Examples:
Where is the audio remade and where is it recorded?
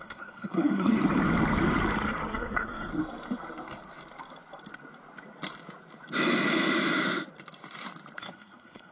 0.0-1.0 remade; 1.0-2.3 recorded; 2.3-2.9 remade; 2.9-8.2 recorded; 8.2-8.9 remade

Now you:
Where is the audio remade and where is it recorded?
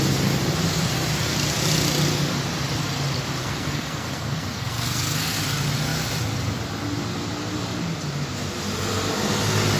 0.0-3.4 recorded; 3.4-5.4 remade; 5.4-9.8 recorded